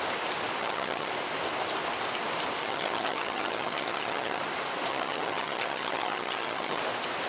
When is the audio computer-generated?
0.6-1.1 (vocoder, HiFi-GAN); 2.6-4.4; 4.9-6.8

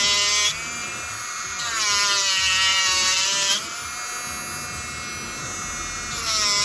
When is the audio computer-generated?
0.8-1.7 (vocoder, BigVGAN v2); 2.7-3.9